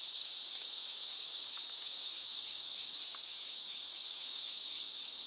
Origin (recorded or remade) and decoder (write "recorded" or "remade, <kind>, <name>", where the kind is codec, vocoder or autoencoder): remade, codec, DAC